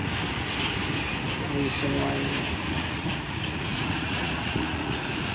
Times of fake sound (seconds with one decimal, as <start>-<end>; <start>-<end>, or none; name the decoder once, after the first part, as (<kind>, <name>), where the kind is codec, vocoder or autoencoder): 2.7-5.3 (vocoder, Vocos)